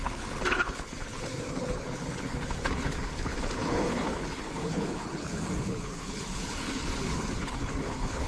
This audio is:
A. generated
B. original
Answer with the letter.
A